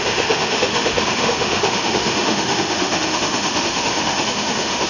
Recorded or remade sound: remade